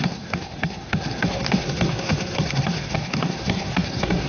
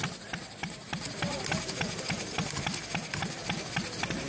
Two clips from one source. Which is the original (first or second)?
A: second